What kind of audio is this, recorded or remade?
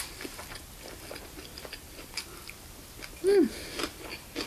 recorded